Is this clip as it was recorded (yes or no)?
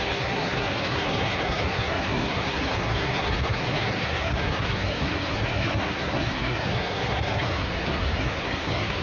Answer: no